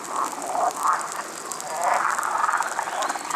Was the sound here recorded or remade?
recorded